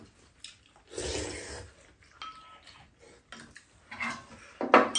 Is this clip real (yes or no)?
yes